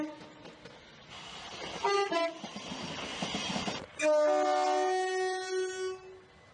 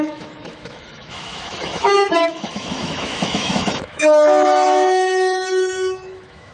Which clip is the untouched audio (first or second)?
first